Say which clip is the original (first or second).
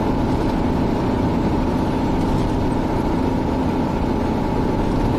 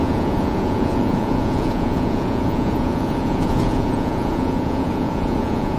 first